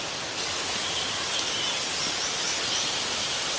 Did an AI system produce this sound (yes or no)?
no